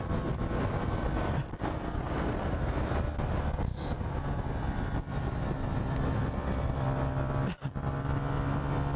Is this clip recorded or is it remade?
recorded